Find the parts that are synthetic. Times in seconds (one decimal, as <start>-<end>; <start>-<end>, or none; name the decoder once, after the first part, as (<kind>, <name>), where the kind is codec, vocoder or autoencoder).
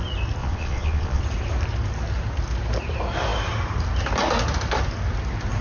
0.4-1.2 (vocoder, Vocos)